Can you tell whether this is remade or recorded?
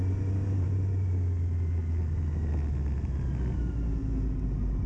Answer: recorded